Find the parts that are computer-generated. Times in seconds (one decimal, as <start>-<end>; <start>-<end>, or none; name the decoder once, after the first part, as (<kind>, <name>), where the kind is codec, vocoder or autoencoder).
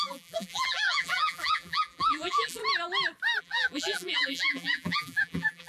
0.0-2.6 (vocoder, BigVGAN v2); 3.4-5.7